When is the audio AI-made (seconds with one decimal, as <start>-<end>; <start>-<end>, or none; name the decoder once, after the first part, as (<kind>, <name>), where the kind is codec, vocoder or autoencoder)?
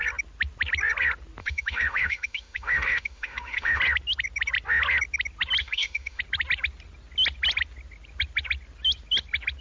1.4-3.8 (autoencoder, DAC-VAE); 5.6-6.2